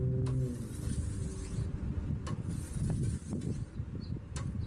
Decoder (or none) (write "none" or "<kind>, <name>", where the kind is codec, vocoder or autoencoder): none